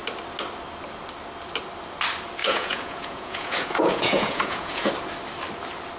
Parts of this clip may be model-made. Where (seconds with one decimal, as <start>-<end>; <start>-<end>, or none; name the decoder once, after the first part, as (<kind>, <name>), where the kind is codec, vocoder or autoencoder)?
2.4-4.9 (vocoder, Vocos)